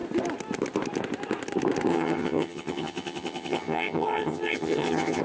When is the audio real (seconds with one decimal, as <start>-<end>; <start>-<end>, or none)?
0.0-1.9